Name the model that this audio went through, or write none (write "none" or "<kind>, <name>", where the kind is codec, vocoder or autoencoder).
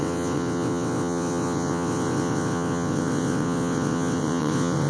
vocoder, WaveNeXt